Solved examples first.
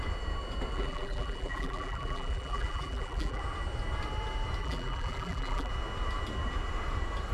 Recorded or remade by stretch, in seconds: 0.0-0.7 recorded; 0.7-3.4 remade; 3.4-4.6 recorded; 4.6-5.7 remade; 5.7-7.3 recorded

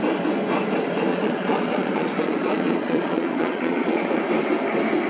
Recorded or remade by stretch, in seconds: 0.0-1.1 recorded; 1.1-4.2 remade; 4.2-5.1 recorded

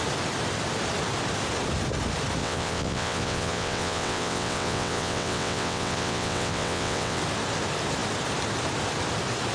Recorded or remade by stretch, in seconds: 0.0-2.4 recorded; 2.4-7.2 remade; 7.2-9.5 recorded

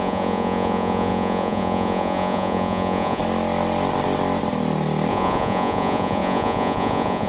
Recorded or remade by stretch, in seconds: 0.0-3.2 remade; 3.2-5.1 recorded; 5.1-7.3 remade